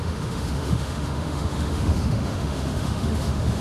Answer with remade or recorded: remade